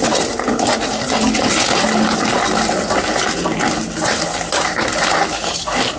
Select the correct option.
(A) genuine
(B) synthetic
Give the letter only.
A